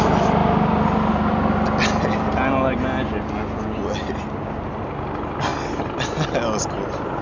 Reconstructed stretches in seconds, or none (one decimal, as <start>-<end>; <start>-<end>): none